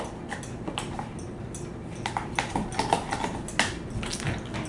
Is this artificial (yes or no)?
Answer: no